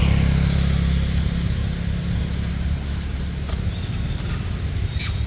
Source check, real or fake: real